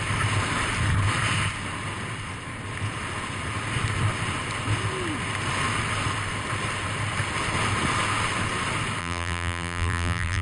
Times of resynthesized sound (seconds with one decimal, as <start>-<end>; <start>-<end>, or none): 9.0-10.4